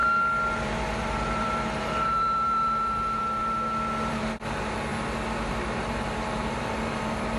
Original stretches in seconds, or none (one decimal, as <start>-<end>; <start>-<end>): 0.0-0.5; 3.4-4.1; 4.9-5.5